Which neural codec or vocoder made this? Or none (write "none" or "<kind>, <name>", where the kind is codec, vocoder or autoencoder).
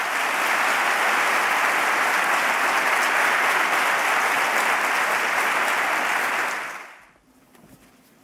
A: none